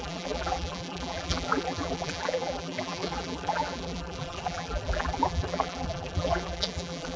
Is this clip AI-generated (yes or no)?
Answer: yes